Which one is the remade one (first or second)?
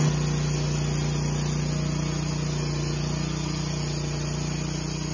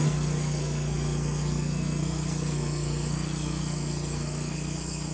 second